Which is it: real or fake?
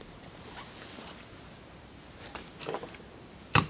real